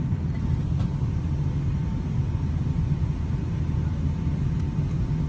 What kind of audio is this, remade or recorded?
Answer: recorded